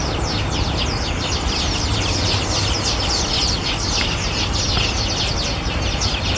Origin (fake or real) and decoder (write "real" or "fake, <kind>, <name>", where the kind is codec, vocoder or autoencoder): real